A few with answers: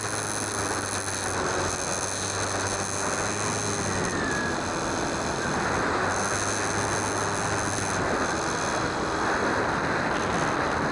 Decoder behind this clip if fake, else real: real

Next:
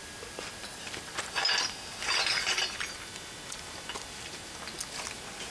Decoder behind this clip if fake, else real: real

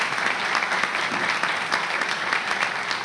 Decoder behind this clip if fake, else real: real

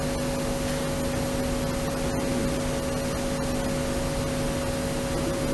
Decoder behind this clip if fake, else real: real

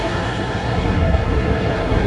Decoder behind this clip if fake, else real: fake, codec, SNAC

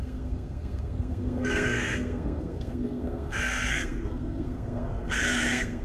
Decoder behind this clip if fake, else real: fake, codec, SNAC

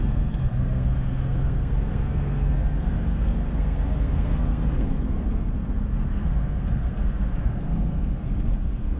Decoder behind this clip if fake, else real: fake, codec, SNAC